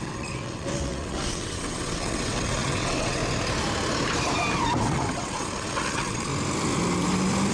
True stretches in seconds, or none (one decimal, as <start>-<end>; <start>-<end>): 3.2-4.8; 6.3-7.5